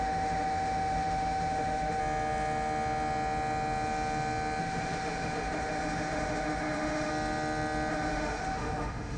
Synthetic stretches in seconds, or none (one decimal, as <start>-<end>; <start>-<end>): 0.0-2.0; 4.6-7.1; 7.9-9.2